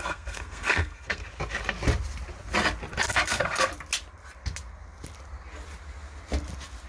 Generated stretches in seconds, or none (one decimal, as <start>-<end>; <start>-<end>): 0.0-1.2; 3.1-3.7